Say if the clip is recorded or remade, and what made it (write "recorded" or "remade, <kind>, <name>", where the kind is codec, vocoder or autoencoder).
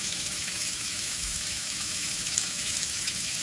remade, autoencoder, DAC-VAE